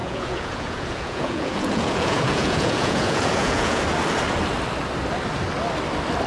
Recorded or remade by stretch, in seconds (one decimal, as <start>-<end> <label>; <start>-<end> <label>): 0.0-3.8 remade; 3.8-6.3 recorded